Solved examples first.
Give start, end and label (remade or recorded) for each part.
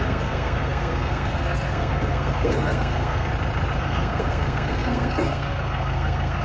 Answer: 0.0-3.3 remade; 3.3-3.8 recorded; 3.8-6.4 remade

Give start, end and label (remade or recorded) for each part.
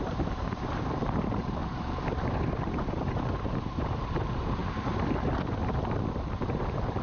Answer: 0.0-1.6 remade; 1.6-3.2 recorded; 3.2-4.6 remade; 4.6-6.3 recorded; 6.3-7.0 remade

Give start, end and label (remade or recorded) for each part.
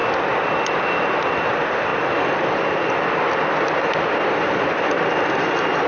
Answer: 0.0-5.9 recorded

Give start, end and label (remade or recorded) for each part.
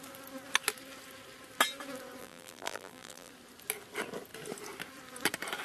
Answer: 0.0-2.2 recorded; 2.2-3.3 remade; 3.3-5.6 recorded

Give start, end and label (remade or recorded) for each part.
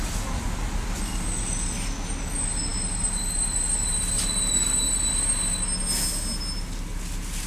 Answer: 0.0-7.5 recorded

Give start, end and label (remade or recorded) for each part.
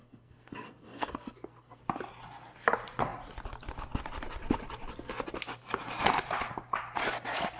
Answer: 0.0-1.8 remade; 1.8-7.6 recorded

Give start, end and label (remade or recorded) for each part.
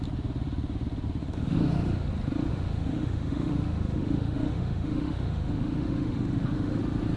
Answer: 0.0-1.2 recorded; 1.2-2.1 remade; 2.1-2.5 recorded; 2.5-6.8 remade; 6.8-7.2 recorded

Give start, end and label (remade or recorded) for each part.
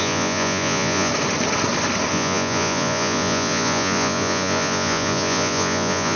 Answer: 0.0-1.1 remade; 1.1-2.1 recorded; 2.1-6.2 remade